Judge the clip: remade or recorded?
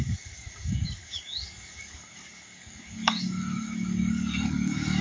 remade